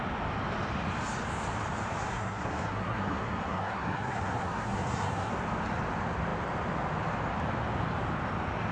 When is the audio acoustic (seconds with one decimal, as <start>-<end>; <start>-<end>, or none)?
0.0-2.1; 5.3-8.7